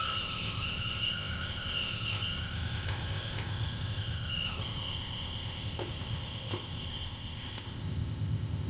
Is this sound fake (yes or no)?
yes